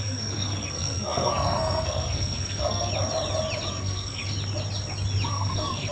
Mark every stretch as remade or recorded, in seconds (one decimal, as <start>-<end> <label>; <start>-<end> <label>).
0.0-2.9 remade; 2.9-3.7 recorded; 3.7-4.2 remade; 4.2-5.3 recorded; 5.3-5.9 remade